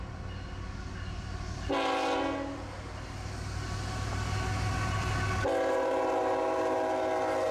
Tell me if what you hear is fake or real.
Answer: real